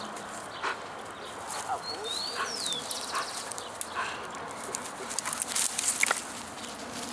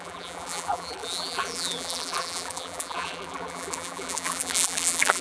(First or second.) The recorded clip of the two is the first